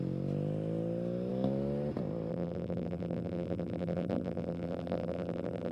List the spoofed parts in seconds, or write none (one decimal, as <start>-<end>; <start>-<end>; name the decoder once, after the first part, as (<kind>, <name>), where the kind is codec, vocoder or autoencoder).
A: 2.3-5.7 (vocoder, BigVGAN v2)